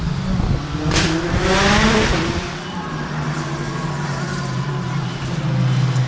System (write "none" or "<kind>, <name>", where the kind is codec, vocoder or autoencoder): none